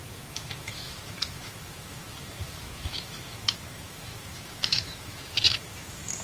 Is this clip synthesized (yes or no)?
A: yes